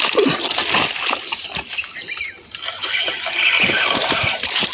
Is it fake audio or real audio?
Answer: real